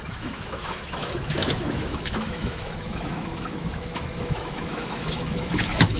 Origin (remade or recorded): remade